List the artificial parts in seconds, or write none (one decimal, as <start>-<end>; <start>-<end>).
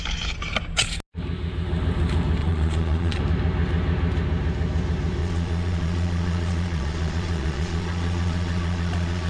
2.4-3.2; 5.2-9.3